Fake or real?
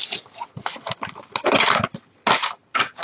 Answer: real